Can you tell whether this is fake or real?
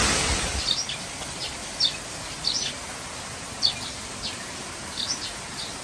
real